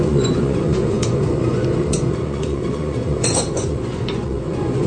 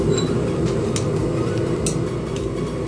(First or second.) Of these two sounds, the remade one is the first